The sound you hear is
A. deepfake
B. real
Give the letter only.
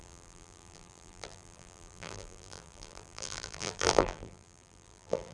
A